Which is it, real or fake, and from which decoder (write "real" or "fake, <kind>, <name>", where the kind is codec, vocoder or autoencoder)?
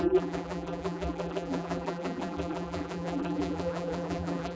fake, vocoder, BigVGAN v2